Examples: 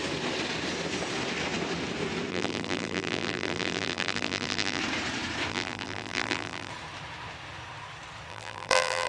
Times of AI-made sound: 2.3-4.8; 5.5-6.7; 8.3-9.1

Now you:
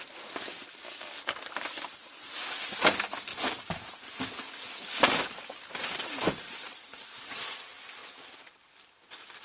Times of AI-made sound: 8.0-8.6

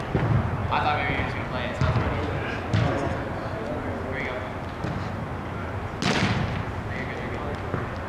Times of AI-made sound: none

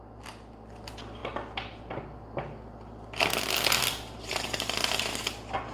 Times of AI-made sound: none

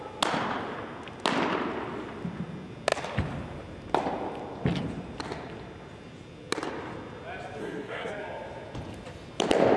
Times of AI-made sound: 7.6-8.1

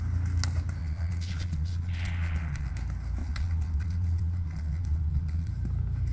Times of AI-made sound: 0.8-2.7; 3.2-5.5

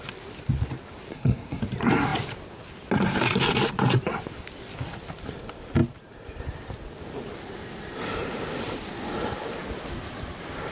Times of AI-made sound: 1.1-1.6

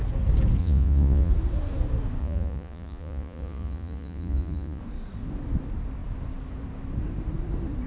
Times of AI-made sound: 0.6-1.3; 2.2-4.8